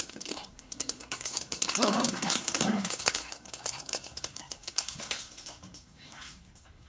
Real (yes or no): no